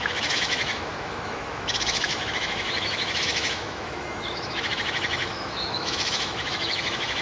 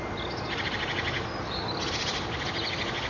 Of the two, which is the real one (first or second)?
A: second